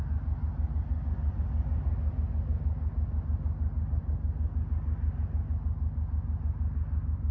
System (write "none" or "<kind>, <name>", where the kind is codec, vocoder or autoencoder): none